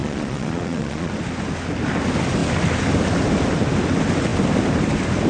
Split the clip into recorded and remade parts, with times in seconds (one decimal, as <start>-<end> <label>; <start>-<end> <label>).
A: 0.0-1.1 remade; 1.1-5.3 recorded